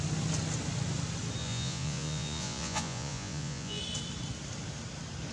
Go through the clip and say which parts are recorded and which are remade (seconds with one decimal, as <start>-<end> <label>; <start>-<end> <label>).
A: 0.0-1.4 recorded; 1.4-3.8 remade; 3.8-5.3 recorded